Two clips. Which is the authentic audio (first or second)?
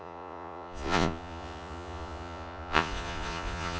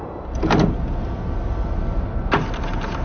second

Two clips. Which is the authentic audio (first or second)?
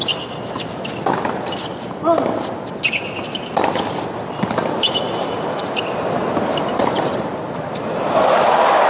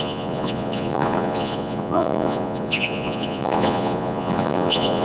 first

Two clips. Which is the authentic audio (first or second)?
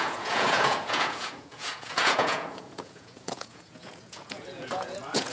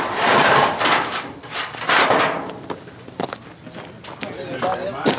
second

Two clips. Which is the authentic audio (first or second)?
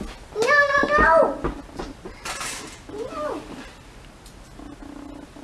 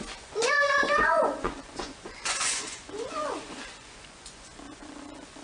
first